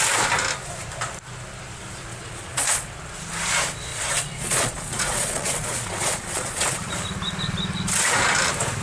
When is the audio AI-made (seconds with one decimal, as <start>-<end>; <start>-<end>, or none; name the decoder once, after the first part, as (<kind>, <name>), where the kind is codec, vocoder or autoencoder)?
2.1-2.9 (vocoder, Vocos); 3.9-6.9